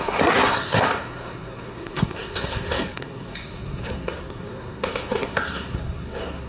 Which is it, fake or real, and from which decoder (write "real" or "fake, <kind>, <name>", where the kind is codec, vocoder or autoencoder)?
fake, codec, SNAC